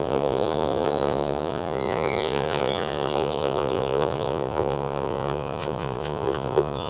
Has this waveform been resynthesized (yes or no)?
yes